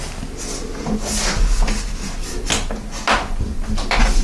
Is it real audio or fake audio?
real